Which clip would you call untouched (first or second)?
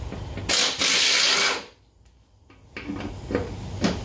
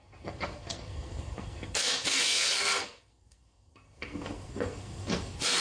first